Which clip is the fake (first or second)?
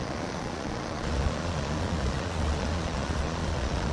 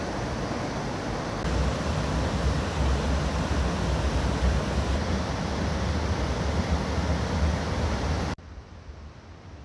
first